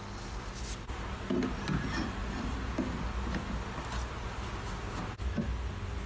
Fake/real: real